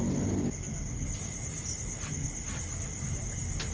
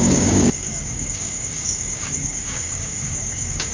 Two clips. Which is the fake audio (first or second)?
second